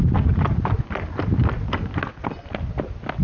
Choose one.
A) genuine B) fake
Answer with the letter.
A